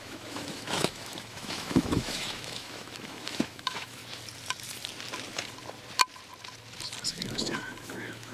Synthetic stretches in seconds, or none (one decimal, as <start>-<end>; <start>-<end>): 0.0-4.0; 7.1-8.3